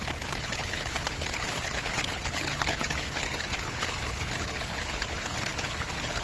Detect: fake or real fake